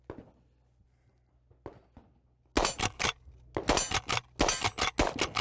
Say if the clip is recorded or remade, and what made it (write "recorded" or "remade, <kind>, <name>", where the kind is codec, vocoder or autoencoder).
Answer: recorded